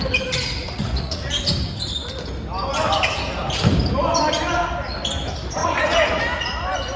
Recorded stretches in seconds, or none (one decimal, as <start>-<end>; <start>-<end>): 0.0-0.6; 1.3-5.6; 6.2-7.0